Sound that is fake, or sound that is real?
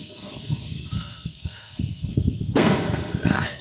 fake